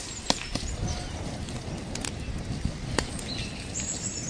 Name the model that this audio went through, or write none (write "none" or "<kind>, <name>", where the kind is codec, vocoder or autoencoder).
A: none